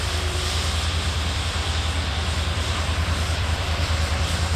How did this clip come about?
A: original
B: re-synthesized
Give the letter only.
B